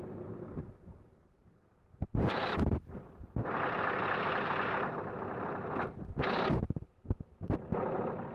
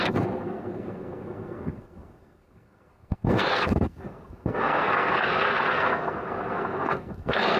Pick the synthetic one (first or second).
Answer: second